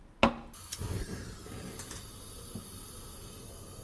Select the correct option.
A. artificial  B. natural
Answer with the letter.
B